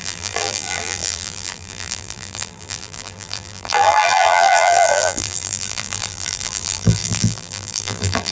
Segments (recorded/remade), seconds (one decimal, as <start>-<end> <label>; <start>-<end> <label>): 0.0-8.3 remade